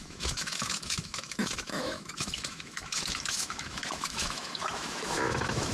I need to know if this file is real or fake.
fake